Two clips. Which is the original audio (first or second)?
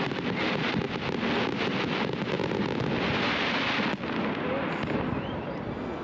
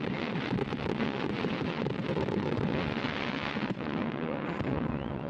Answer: first